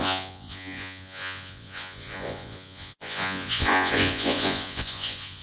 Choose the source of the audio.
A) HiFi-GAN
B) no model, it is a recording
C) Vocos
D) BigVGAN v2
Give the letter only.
C